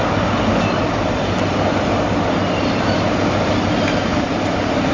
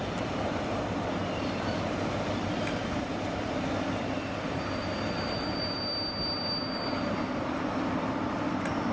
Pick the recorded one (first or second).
first